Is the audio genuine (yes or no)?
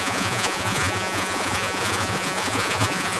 no